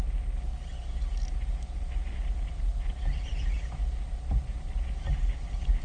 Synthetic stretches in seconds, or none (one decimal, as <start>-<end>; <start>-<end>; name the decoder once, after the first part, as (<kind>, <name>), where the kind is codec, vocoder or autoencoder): none